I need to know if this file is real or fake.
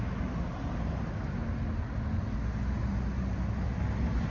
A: real